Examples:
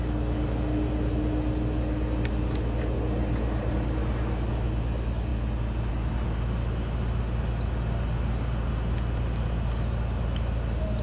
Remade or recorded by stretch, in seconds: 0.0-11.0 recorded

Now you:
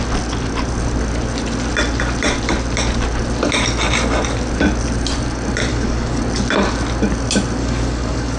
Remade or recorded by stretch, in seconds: 0.0-5.7 recorded; 5.7-6.2 remade; 6.2-7.6 recorded; 7.6-8.4 remade

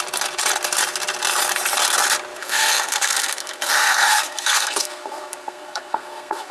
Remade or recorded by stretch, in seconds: 0.0-2.4 recorded; 2.4-6.5 remade